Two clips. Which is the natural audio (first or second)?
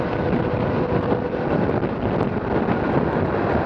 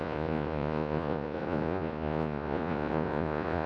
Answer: first